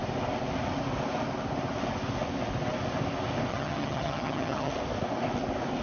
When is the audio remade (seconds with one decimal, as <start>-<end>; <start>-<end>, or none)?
3.5-4.7